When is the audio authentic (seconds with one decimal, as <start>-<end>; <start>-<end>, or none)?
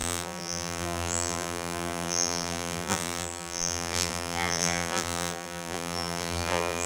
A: none